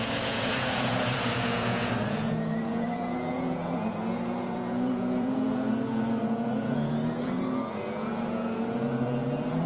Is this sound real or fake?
fake